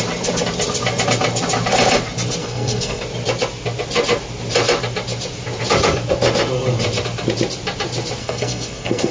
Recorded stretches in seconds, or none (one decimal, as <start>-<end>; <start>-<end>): 0.0-2.4; 3.0-8.2